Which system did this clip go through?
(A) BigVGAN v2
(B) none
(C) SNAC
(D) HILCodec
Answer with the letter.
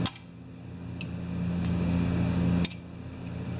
B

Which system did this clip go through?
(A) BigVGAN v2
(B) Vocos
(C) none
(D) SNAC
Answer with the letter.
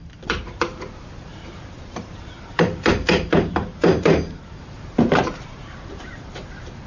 A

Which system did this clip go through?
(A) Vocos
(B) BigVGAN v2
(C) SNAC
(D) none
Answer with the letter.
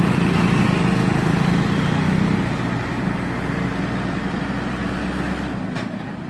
D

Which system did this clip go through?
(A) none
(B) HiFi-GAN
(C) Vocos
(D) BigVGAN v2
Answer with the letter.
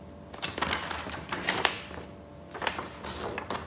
D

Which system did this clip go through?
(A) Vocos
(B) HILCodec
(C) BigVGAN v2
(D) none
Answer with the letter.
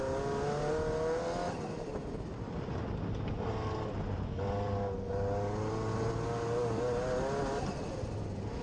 D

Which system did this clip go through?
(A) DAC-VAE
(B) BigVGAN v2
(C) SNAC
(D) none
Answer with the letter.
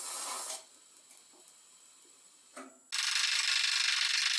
D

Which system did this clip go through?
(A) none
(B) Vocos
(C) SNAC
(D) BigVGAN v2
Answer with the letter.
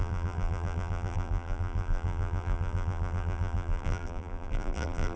D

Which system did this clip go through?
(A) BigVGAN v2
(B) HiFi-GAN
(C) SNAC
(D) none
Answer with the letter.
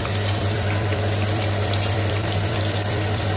A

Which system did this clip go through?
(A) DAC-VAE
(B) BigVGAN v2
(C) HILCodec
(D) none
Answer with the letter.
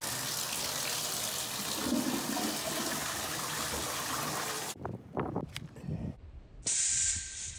D